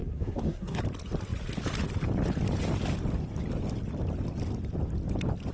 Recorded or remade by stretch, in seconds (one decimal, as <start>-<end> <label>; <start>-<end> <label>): 0.0-0.8 remade; 0.8-5.5 recorded